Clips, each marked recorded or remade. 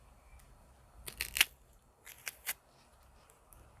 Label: recorded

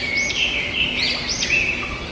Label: recorded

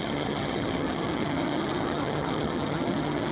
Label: remade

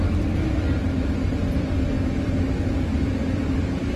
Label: recorded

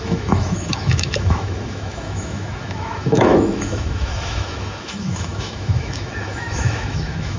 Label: remade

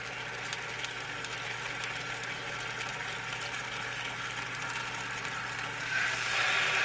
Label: recorded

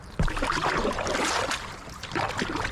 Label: recorded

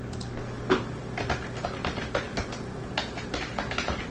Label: recorded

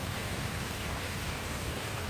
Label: remade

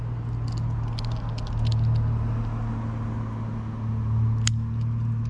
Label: recorded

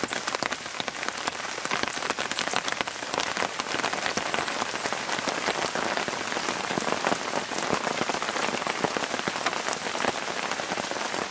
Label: recorded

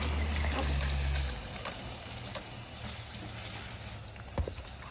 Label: recorded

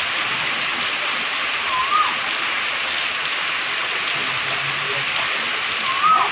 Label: recorded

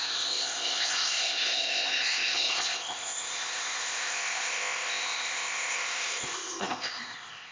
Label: remade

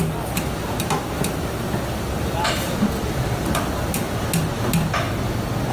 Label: recorded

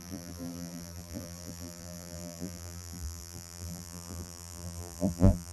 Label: remade